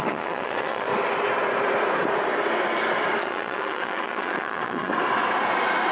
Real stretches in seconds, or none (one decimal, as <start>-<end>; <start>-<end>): 0.9-3.2; 4.9-5.9